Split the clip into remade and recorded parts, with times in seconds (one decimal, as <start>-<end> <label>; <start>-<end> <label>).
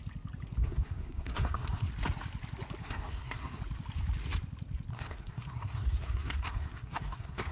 0.0-0.6 recorded; 0.6-1.9 remade; 1.9-2.8 recorded; 2.8-3.6 remade; 3.6-4.9 recorded; 4.9-7.5 remade